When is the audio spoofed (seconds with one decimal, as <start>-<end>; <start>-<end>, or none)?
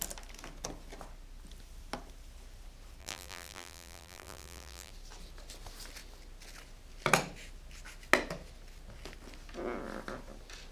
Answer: 3.0-4.9